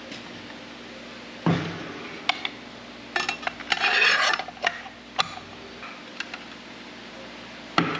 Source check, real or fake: real